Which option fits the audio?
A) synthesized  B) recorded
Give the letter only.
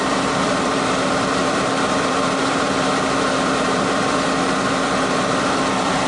A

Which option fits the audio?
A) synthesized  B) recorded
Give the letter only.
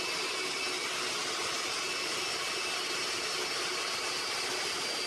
B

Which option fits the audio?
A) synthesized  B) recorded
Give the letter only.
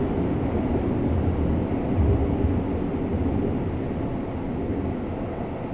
B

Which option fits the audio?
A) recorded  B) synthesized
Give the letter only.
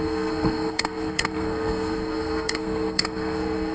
B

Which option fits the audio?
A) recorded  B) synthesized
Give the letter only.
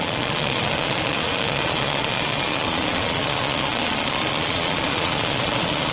B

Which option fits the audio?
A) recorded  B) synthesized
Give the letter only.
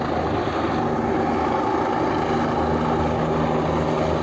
A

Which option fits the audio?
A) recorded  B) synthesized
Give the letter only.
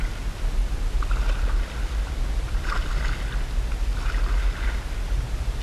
A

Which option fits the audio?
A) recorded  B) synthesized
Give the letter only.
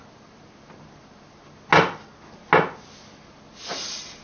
A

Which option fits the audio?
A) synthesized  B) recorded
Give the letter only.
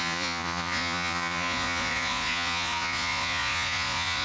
A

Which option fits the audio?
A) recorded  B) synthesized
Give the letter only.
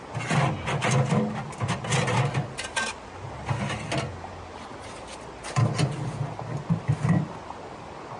A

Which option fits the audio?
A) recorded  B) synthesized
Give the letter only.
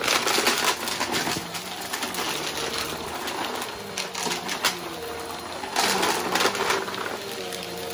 A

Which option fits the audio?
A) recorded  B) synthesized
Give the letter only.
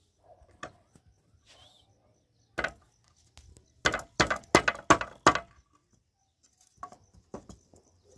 A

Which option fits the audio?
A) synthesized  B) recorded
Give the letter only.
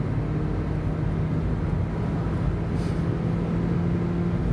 B